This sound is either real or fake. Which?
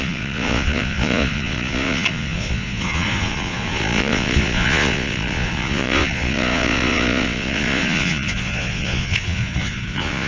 fake